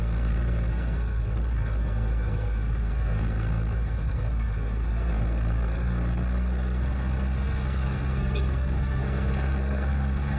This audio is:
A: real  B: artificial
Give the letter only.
B